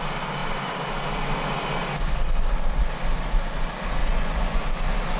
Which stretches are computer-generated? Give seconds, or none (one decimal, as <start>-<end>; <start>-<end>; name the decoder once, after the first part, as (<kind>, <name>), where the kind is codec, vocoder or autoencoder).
4.0-4.6 (vocoder, Vocos)